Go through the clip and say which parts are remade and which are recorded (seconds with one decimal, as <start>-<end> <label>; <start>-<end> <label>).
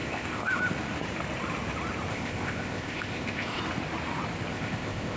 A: 0.0-0.5 remade; 0.5-2.1 recorded; 2.1-3.6 remade; 3.6-4.5 recorded; 4.5-5.2 remade